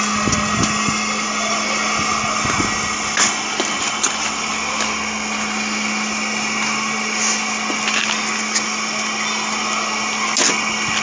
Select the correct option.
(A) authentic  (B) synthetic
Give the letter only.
A